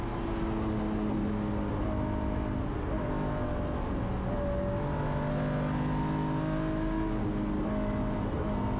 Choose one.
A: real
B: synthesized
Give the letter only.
A